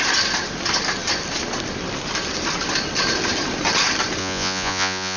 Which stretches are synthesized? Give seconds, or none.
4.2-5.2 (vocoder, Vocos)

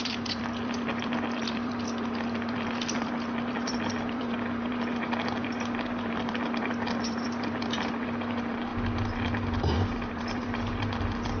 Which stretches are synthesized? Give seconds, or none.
0.0-8.7 (vocoder, BigVGAN v2); 10.1-11.4

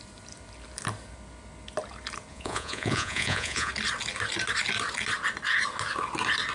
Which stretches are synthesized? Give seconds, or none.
2.3-3.7 (vocoder, Vocos)

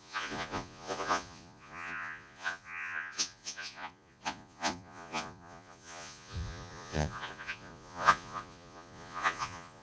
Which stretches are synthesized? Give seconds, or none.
0.0-9.8 (vocoder, Vocos)